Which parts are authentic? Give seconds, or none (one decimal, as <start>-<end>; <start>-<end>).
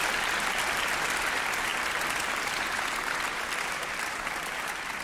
0.0-5.0